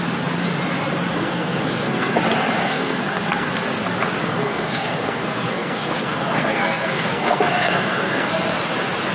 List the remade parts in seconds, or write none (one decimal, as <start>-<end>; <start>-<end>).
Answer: 1.1-2.2; 2.6-3.5; 4.2-8.3